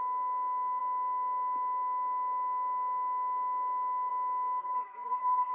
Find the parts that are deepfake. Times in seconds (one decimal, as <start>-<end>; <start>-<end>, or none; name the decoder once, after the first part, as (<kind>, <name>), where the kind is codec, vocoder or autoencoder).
4.6-5.5 (codec, SNAC)